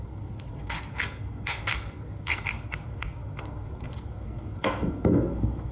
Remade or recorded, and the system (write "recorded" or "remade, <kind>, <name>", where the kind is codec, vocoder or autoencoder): remade, codec, SNAC